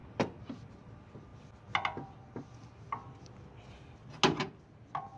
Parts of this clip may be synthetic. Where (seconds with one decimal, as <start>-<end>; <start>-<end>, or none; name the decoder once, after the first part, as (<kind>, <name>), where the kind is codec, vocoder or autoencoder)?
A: none